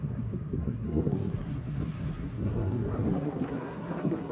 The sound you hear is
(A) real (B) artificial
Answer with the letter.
B